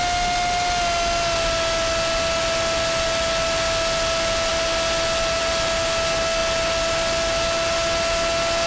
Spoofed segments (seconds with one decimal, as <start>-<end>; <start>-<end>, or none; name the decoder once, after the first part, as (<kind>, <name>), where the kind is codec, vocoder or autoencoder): none